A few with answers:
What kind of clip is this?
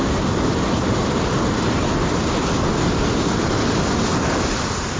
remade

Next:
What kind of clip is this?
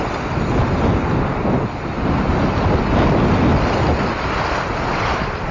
recorded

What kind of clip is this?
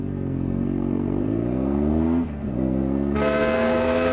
remade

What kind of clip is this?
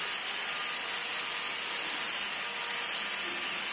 recorded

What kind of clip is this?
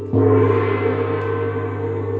recorded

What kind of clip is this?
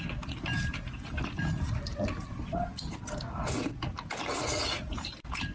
recorded